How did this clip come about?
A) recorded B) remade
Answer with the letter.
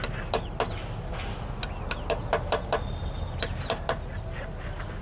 A